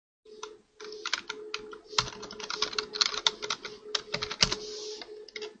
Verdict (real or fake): real